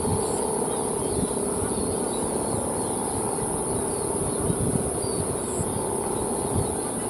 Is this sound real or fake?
real